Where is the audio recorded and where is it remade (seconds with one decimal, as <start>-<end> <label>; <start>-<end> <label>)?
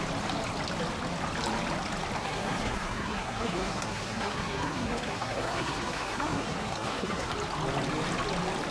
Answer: 0.0-2.2 recorded; 2.2-7.3 remade; 7.3-8.7 recorded